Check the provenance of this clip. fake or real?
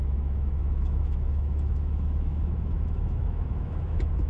fake